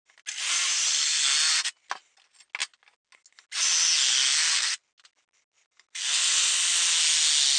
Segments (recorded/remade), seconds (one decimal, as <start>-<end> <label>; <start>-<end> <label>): 0.0-7.6 recorded